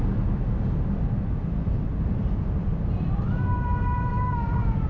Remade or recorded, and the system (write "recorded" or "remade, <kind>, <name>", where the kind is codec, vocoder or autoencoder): recorded